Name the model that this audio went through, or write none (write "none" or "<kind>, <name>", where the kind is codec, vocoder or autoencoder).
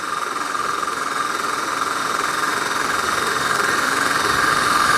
autoencoder, DAC-VAE